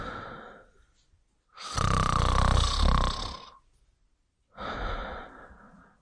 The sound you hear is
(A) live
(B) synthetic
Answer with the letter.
A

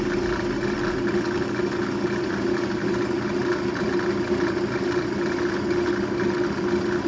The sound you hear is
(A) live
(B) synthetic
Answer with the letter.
A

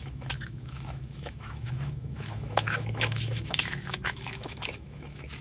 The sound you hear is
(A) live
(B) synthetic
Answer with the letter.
B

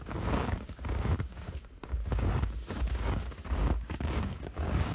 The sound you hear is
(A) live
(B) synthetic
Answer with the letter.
B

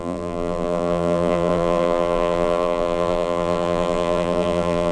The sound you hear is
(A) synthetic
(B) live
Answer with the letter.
A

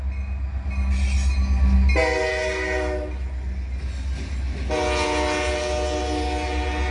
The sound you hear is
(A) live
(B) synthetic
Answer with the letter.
A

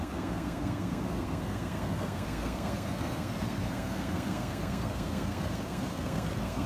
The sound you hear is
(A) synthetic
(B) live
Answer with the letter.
A